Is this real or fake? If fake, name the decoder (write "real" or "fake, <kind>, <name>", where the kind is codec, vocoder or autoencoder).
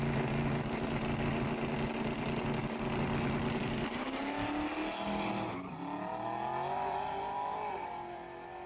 real